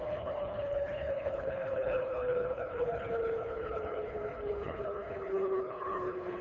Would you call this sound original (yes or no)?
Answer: no